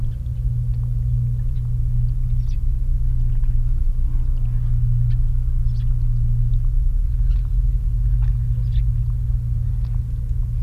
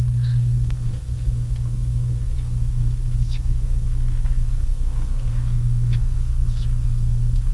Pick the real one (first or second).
first